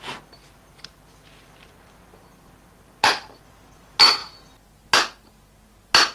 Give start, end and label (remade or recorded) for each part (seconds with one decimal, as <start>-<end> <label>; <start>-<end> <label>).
0.0-6.1 recorded